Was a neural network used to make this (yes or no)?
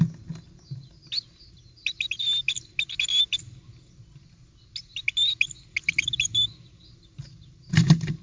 no